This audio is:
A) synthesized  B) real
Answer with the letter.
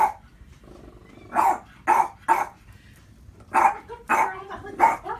B